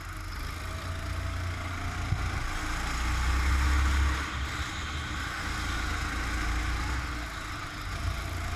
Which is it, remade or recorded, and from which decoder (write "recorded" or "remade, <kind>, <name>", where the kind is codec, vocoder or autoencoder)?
recorded